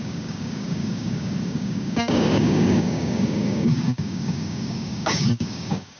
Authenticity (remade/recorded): remade